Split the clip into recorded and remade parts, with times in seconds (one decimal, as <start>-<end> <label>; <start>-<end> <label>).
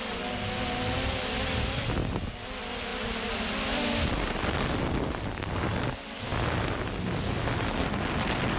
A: 0.0-8.6 recorded